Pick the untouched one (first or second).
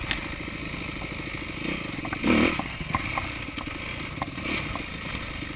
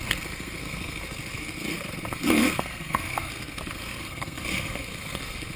first